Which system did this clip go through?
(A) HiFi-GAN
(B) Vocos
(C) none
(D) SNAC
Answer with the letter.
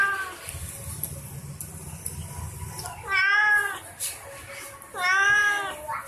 C